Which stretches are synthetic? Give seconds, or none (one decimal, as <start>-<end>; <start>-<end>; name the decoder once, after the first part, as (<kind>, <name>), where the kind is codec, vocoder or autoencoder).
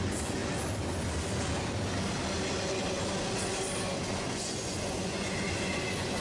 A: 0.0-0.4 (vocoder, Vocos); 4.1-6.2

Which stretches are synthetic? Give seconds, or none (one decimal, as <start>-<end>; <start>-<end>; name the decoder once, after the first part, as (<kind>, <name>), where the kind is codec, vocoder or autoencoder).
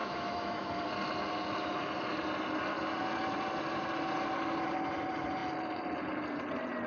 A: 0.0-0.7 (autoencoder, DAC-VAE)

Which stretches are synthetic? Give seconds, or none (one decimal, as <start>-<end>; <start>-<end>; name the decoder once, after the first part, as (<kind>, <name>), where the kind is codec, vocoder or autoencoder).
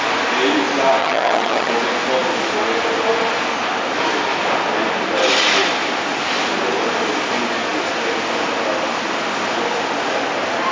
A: 1.0-1.7 (vocoder, HiFi-GAN)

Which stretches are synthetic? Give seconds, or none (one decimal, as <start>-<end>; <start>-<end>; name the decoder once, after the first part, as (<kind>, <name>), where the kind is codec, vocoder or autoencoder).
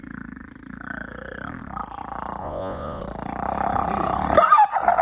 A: 2.4-3.0 (vocoder, Vocos)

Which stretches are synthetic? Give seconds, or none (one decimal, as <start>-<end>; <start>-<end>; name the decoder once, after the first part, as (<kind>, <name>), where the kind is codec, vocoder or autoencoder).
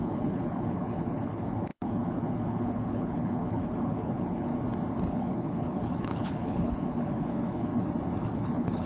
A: 0.0-4.5 (codec, HILCodec); 5.1-7.7; 8.2-8.9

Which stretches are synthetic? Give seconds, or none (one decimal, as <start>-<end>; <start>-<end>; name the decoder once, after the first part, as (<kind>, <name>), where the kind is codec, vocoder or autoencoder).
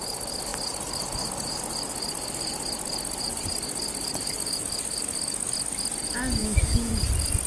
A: 6.4-6.9 (autoencoder, DAC-VAE)